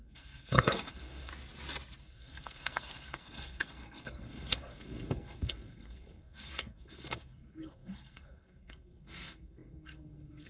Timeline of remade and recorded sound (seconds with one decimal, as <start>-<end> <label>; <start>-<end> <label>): 0.0-1.3 remade; 1.3-2.0 recorded; 2.0-10.5 remade